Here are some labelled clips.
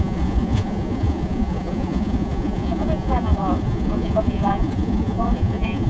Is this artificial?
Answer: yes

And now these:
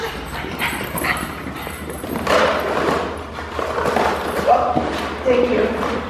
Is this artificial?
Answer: yes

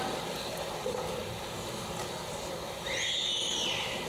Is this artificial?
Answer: no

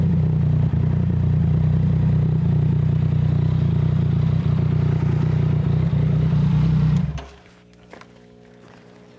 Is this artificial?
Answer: no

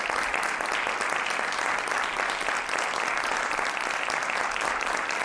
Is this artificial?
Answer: no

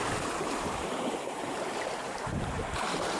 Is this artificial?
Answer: yes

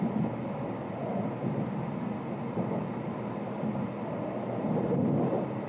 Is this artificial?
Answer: no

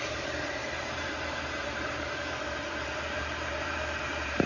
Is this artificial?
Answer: yes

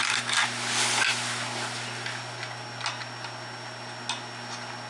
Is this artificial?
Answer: no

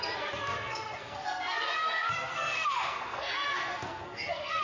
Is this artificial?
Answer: yes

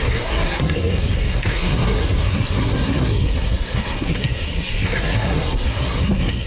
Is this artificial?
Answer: yes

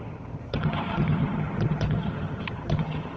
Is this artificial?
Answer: yes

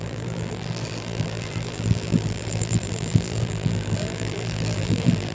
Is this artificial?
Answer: yes